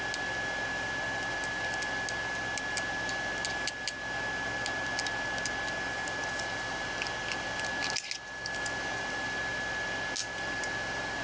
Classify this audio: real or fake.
real